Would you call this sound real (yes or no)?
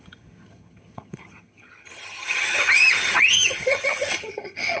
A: no